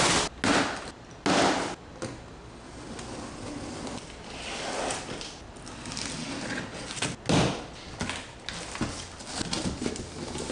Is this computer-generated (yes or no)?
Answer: no